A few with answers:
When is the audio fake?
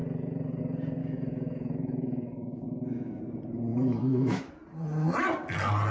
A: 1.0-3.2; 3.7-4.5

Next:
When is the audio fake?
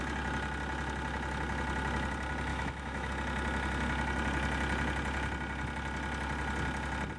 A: 2.5-3.1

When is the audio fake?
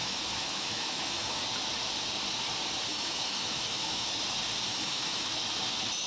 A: 0.0-1.4; 2.9-4.1; 4.7-5.3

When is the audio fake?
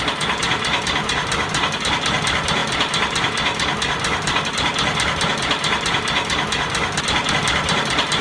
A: none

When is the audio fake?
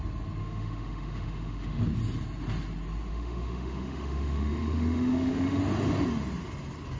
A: 0.4-1.8; 3.1-5.6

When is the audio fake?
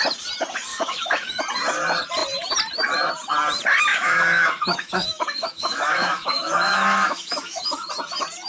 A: 0.7-1.4; 3.9-7.9